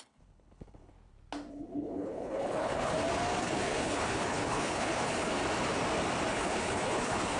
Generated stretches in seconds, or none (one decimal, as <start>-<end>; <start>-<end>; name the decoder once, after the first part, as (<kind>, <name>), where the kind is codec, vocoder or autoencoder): 0.0-0.9 (codec, HILCodec); 1.5-2.9; 3.4-5.4; 6.3-7.4